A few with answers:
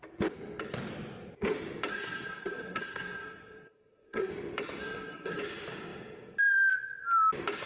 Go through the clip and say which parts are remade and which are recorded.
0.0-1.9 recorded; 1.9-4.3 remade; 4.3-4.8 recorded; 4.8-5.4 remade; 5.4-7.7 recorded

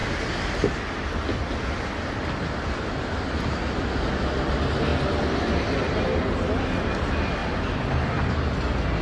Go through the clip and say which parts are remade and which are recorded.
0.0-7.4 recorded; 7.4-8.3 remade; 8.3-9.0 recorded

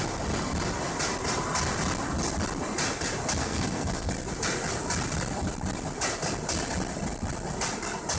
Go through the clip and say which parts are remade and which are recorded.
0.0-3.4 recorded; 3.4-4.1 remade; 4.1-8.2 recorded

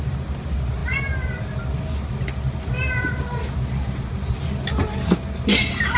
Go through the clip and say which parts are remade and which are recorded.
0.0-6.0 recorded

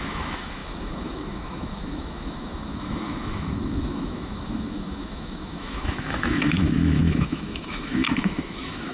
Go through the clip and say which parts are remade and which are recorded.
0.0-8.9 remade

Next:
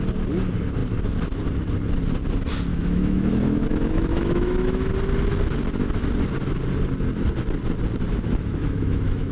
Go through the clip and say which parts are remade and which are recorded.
0.0-2.7 recorded; 2.7-4.9 remade; 4.9-8.1 recorded; 8.1-9.3 remade